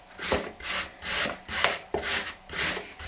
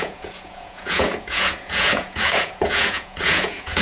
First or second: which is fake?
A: second